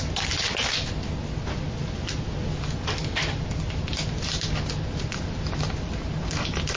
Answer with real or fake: real